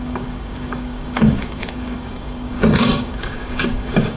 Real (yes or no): no